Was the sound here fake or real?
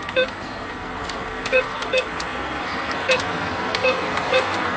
fake